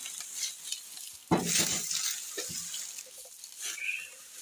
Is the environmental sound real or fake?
real